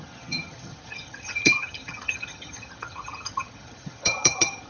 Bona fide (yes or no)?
no